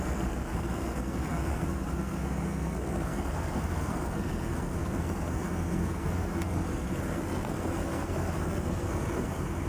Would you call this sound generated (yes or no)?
yes